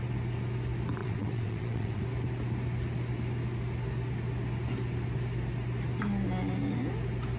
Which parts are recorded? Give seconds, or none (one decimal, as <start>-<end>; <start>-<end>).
0.0-1.0; 2.0-7.4